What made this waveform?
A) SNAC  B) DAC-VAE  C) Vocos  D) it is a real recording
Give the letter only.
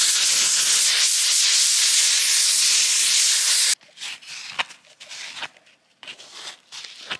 D